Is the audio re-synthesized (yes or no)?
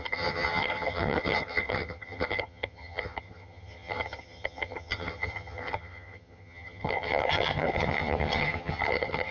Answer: yes